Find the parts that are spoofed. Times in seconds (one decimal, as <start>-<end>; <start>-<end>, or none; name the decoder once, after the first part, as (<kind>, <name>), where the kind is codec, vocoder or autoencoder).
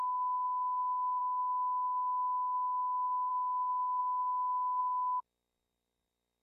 1.2-3.3 (autoencoder, DAC-VAE); 4.0-4.8